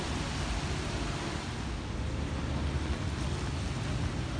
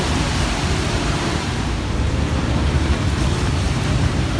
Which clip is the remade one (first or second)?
second